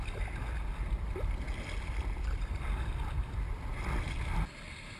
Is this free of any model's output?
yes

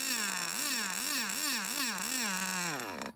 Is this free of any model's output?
yes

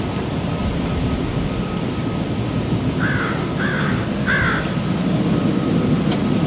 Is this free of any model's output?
yes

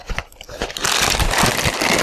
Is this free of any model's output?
yes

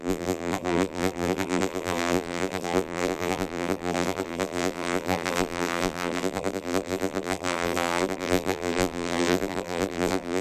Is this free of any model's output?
no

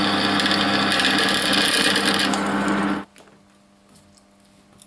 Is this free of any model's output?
yes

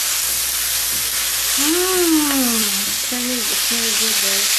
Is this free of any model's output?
yes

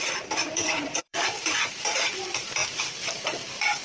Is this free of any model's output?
no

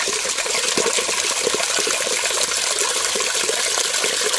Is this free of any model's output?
yes